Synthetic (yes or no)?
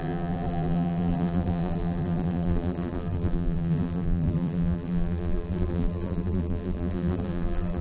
yes